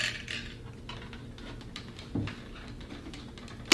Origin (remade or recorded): recorded